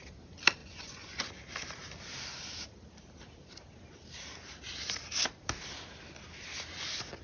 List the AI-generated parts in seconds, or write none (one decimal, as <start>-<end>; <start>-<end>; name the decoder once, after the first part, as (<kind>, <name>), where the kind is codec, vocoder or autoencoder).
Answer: 0.6-1.3 (vocoder, Vocos)